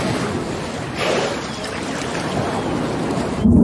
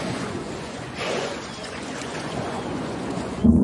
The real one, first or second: first